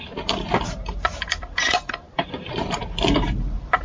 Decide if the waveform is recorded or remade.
remade